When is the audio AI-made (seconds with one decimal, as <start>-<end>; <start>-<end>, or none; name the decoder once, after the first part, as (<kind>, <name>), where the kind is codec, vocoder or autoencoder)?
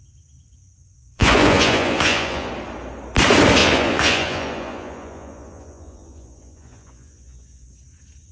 0.8-2.5 (vocoder, Vocos); 3.6-7.7